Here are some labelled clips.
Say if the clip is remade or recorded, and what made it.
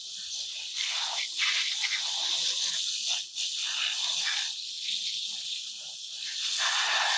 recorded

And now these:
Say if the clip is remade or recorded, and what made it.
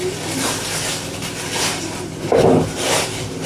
recorded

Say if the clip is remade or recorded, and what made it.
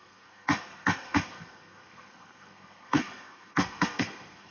remade, codec, SNAC